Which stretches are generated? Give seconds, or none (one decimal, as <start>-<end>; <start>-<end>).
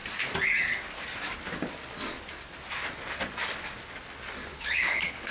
4.5-5.3